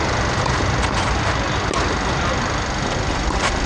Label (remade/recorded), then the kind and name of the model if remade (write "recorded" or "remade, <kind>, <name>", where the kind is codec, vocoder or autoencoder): recorded